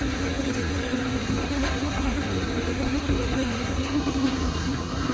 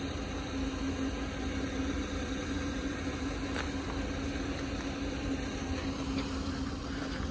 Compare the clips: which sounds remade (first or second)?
first